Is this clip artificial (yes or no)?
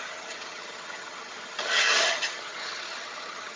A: yes